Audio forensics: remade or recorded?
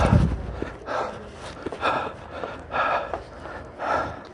recorded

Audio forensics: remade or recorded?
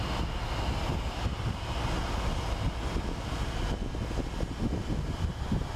recorded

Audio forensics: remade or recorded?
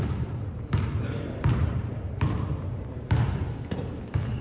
remade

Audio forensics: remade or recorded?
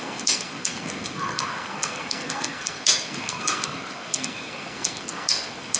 remade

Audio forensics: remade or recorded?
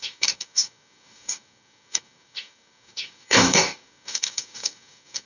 remade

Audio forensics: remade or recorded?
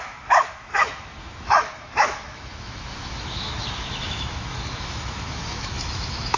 remade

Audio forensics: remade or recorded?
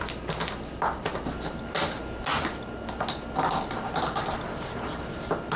recorded